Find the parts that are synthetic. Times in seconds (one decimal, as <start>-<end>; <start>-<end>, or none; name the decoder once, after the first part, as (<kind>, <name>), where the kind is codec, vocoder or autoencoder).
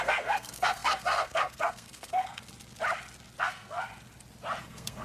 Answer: 0.0-2.4 (codec, SNAC); 3.4-3.9; 4.6-5.0